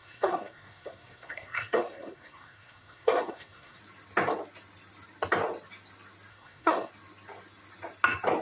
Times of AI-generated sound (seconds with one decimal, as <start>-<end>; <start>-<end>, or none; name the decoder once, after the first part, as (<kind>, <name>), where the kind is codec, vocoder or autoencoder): 0.0-3.8 (codec, SNAC); 6.3-6.9